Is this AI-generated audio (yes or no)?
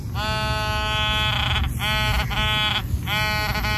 no